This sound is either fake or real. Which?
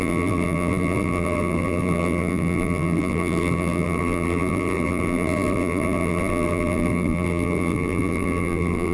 fake